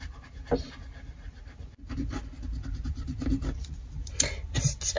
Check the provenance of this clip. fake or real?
real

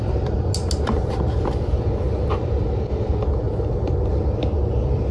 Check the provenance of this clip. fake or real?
real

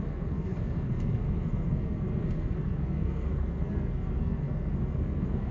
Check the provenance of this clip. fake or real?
fake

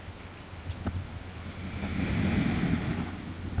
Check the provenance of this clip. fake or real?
real